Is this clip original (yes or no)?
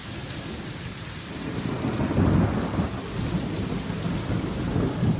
yes